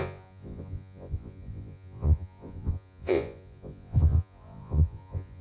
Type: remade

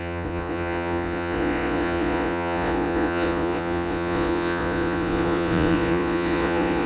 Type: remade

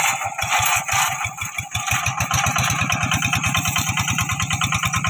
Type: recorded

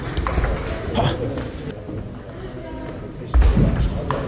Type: recorded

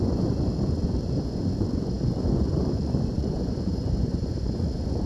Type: remade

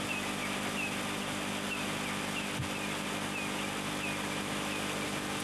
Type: recorded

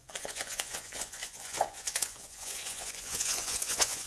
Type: remade